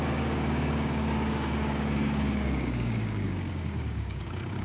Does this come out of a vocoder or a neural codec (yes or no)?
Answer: yes